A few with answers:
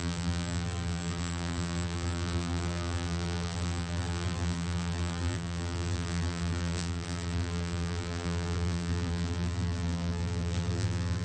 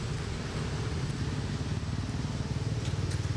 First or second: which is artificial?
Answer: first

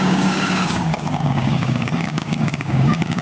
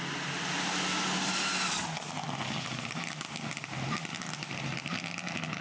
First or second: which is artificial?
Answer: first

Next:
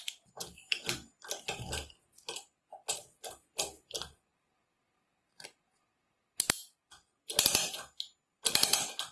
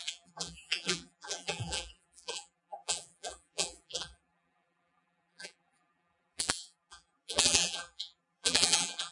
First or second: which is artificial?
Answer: second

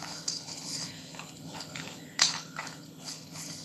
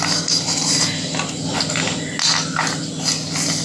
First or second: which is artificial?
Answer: first